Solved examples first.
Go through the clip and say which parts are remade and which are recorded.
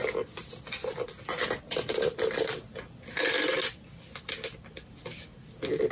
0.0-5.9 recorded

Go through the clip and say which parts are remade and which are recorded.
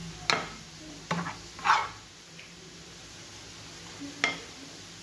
0.0-1.8 recorded; 1.8-2.7 remade; 2.7-5.0 recorded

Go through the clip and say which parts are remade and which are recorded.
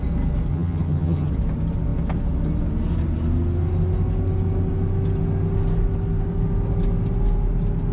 0.0-0.5 recorded; 0.5-1.3 remade; 1.3-7.9 recorded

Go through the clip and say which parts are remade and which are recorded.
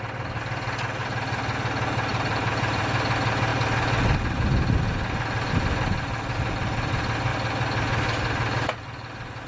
0.0-2.1 recorded; 2.1-2.8 remade; 2.8-9.5 recorded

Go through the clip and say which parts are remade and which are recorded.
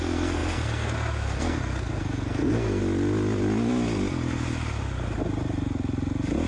0.0-2.8 remade; 2.8-6.5 recorded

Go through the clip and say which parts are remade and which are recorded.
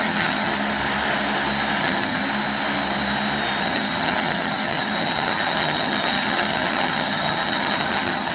0.0-0.5 remade; 0.5-1.8 recorded; 1.8-2.2 remade; 2.2-3.6 recorded; 3.6-8.3 remade